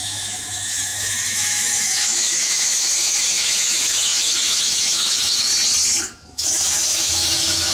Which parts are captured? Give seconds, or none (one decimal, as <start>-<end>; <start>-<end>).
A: 5.5-6.0